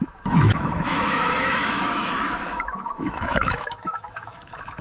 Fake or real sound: fake